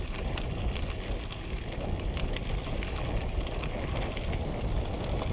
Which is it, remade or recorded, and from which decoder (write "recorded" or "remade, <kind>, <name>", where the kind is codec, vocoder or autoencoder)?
recorded